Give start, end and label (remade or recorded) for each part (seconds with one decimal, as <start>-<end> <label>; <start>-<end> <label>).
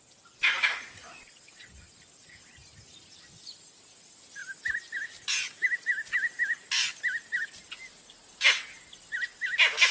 0.0-9.9 recorded